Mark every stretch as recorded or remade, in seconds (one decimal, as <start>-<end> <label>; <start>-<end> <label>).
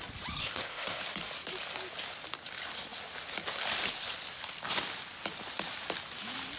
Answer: 0.0-0.4 recorded; 0.4-1.0 remade; 1.0-6.6 recorded